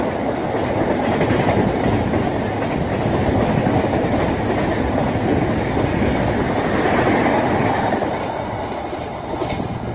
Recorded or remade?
recorded